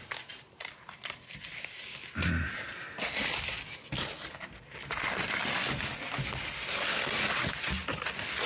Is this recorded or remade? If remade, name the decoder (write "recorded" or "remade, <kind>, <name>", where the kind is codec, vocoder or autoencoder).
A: recorded